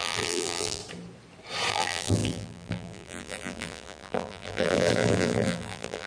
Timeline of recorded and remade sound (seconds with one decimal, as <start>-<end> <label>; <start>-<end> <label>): 0.0-0.8 remade; 0.8-1.7 recorded; 1.7-6.1 remade